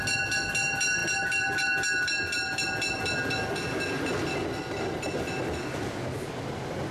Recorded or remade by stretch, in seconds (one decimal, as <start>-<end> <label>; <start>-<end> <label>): 0.0-6.9 recorded